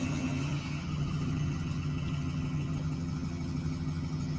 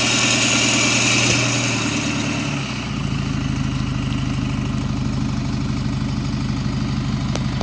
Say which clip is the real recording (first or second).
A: second